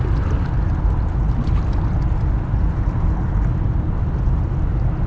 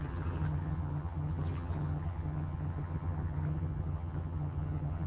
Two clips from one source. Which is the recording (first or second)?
first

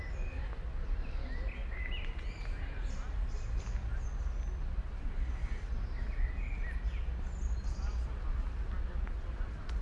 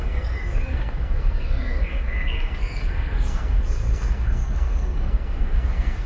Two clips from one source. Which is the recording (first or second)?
first